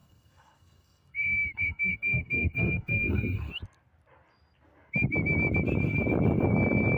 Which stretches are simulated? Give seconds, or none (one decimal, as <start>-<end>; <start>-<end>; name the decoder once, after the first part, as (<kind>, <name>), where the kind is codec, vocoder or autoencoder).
0.0-3.5 (codec, SNAC)